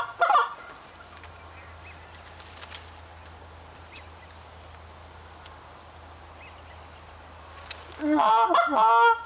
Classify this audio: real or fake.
real